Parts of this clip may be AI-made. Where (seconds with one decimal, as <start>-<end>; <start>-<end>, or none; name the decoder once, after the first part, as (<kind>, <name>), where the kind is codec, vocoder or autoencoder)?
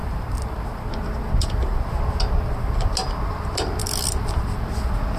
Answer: 3.8-4.5 (vocoder, BigVGAN v2)